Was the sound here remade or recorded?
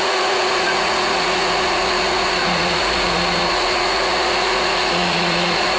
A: remade